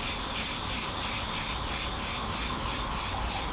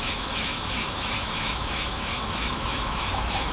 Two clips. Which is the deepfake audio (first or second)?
second